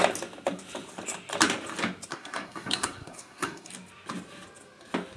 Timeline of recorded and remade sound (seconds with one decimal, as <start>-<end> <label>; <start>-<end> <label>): 0.0-2.1 recorded; 2.1-3.7 remade; 3.7-5.2 recorded